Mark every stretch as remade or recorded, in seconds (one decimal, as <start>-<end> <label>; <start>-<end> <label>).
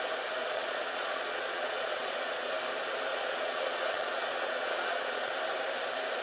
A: 0.0-0.4 recorded; 0.4-2.5 remade; 2.5-3.1 recorded; 3.1-5.3 remade; 5.3-6.2 recorded